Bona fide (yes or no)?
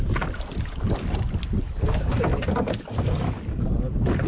yes